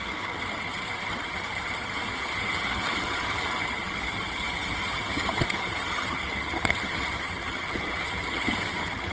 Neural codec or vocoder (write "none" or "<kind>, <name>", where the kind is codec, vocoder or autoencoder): vocoder, HiFi-GAN